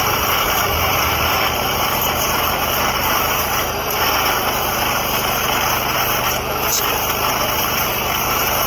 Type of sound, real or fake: fake